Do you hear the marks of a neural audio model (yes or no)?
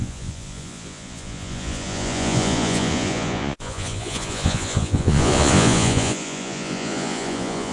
yes